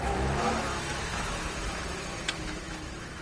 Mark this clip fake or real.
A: fake